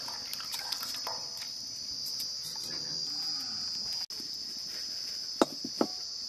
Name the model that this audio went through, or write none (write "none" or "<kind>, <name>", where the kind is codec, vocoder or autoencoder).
none